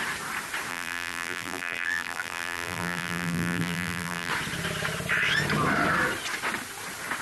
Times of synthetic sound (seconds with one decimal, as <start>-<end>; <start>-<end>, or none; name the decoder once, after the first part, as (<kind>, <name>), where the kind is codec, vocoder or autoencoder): 0.7-4.3 (vocoder, BigVGAN v2)